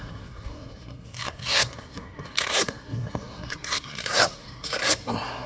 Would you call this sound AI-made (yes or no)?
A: yes